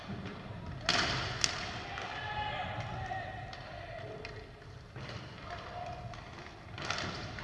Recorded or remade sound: recorded